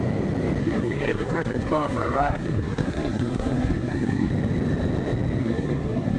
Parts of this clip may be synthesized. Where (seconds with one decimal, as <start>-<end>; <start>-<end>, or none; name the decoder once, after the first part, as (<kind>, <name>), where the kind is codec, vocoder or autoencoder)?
0.6-4.3 (codec, SNAC); 5.4-6.2